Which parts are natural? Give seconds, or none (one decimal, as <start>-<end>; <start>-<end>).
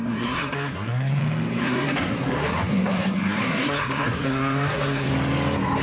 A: 1.2-1.6; 5.1-5.8